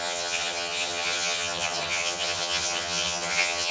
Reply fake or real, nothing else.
fake